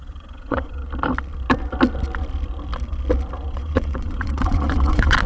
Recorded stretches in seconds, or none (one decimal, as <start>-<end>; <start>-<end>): 0.8-3.5